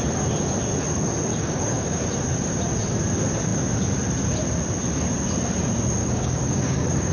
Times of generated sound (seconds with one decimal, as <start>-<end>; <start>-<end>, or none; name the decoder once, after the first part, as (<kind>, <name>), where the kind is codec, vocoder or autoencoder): 1.3-2.0 (codec, DAC); 6.0-7.1